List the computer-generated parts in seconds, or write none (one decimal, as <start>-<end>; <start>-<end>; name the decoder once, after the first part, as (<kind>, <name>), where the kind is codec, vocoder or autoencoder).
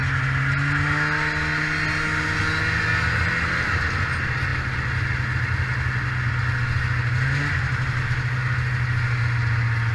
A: none